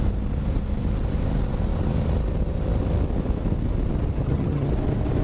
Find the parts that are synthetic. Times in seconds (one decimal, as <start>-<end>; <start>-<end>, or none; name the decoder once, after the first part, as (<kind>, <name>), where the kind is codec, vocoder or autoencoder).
4.2-4.7 (vocoder, HiFi-GAN)